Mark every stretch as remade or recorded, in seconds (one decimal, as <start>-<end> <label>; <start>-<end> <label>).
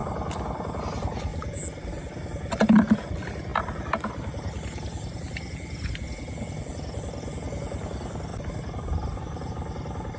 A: 0.0-8.3 recorded; 8.3-9.5 remade; 9.5-10.2 recorded